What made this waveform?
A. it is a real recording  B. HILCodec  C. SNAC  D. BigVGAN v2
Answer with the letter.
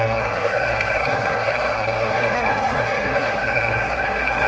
C